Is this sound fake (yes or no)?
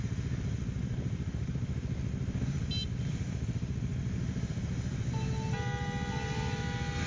no